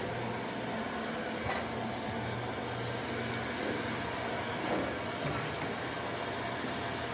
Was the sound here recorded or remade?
recorded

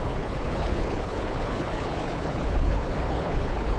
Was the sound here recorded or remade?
remade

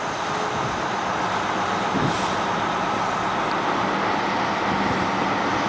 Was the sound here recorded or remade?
recorded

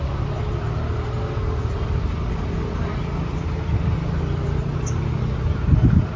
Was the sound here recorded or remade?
recorded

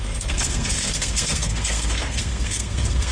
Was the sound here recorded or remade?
remade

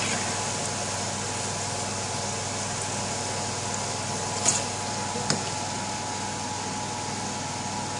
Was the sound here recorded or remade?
recorded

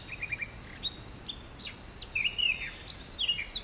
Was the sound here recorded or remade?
recorded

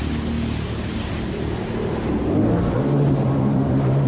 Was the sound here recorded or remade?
recorded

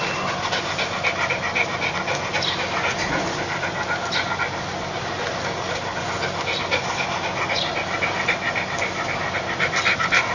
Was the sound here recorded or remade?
recorded